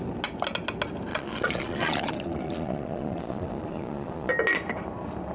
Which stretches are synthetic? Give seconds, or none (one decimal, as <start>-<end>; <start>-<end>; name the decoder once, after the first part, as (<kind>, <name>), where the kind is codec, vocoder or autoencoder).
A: 1.1-4.3 (vocoder, Vocos)